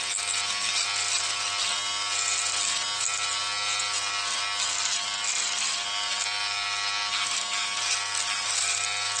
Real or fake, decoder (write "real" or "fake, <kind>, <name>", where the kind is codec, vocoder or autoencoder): real